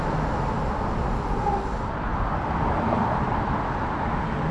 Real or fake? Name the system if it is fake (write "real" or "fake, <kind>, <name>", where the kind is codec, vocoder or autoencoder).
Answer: real